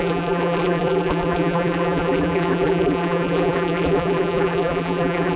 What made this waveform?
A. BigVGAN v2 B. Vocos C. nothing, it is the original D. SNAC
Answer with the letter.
A